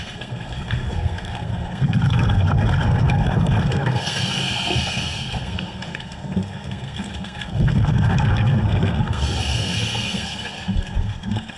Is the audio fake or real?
fake